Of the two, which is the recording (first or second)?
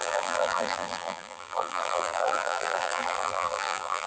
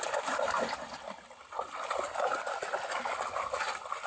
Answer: second